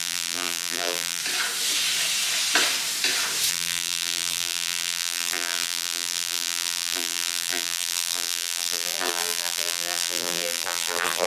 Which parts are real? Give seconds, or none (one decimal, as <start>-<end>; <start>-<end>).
1.2-3.5